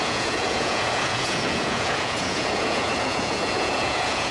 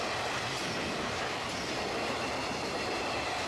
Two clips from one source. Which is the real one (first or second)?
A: second